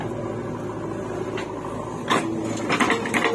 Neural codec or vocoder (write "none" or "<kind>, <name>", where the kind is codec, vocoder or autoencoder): none